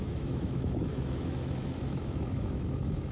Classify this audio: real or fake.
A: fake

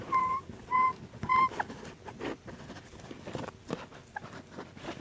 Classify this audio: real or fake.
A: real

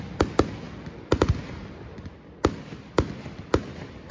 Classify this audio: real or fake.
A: real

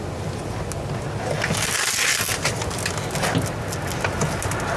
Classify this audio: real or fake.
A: real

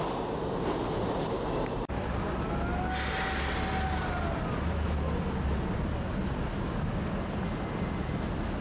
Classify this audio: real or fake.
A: real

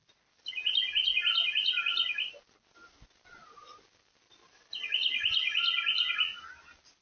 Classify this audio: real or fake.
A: real